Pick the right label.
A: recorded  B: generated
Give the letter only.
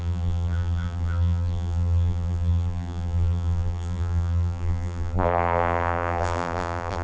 B